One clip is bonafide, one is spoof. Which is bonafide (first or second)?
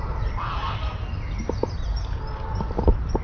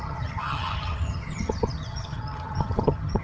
first